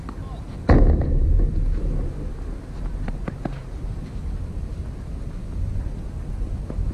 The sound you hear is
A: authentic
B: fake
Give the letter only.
A